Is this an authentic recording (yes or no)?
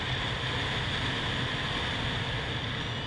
yes